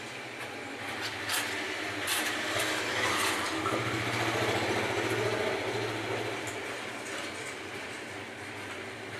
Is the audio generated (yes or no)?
no